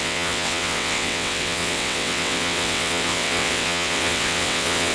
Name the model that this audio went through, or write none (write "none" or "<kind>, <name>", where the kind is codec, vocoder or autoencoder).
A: vocoder, WaveNeXt